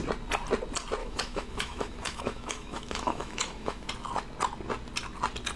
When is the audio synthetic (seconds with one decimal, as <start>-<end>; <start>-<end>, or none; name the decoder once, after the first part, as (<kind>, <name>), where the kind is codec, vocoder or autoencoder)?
1.0-3.9 (autoencoder, DAC-VAE)